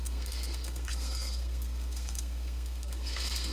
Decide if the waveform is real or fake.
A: fake